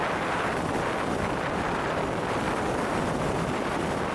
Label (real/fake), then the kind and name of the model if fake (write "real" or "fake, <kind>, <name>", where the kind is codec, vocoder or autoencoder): fake, vocoder, BigVGAN v2